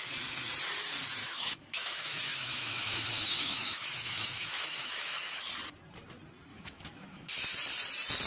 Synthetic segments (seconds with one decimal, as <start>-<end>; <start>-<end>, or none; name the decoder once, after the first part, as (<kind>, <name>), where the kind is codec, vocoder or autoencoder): 1.2-5.4 (autoencoder, DAC-VAE); 6.5-7.3